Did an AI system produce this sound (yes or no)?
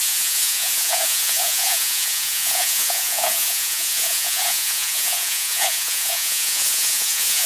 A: yes